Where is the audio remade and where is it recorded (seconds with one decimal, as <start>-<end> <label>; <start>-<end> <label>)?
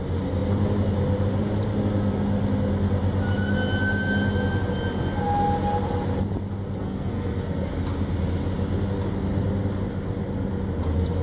0.0-6.8 recorded; 6.8-7.7 remade; 7.7-11.2 recorded